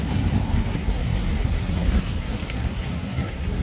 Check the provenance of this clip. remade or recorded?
remade